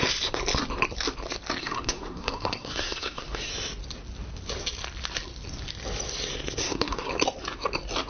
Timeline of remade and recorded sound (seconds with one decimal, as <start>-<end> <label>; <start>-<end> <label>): 0.0-1.6 recorded; 1.6-3.5 remade; 3.5-6.6 recorded; 6.6-7.1 remade; 7.1-8.1 recorded